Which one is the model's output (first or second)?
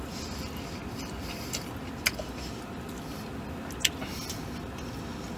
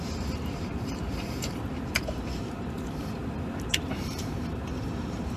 second